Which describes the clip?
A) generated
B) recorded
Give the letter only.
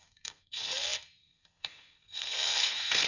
A